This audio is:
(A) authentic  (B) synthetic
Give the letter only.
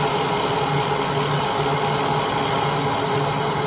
A